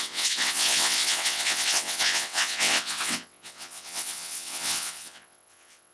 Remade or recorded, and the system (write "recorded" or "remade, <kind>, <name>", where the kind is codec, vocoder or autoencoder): remade, vocoder, WaveNeXt